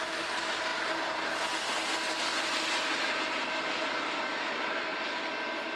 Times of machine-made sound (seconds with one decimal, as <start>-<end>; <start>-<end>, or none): none